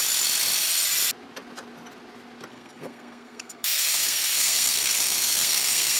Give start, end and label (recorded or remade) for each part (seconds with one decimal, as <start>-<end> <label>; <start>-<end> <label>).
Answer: 0.0-2.5 recorded; 2.5-6.0 remade